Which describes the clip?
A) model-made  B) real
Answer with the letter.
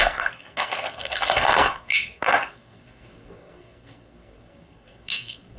A